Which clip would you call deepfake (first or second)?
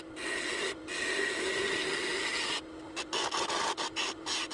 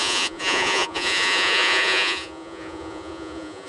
second